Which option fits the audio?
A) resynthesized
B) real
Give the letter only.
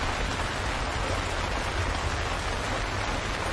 B